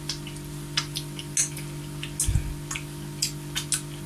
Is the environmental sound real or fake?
real